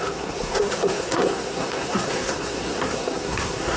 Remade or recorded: remade